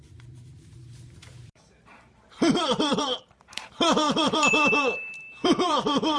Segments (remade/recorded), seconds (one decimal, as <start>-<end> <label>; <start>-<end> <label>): 0.0-6.2 remade